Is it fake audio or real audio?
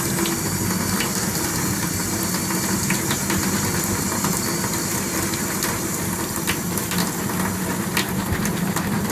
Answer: real